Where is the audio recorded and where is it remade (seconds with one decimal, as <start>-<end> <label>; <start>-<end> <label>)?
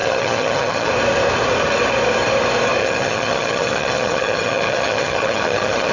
0.0-0.9 remade; 0.9-2.8 recorded; 2.8-5.9 remade